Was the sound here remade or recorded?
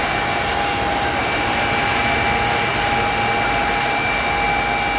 recorded